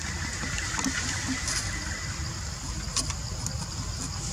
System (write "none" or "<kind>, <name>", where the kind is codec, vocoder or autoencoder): none